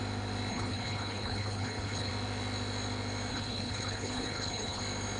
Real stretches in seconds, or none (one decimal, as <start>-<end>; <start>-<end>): 0.0-0.5; 2.1-3.3; 4.8-5.2